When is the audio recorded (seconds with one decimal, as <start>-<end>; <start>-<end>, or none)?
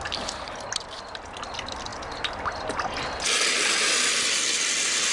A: 0.0-5.1